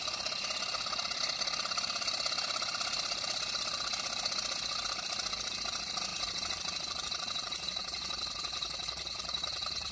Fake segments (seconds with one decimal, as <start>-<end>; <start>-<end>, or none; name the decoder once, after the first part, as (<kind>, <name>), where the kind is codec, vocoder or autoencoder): 6.1-9.9 (vocoder, BigVGAN v2)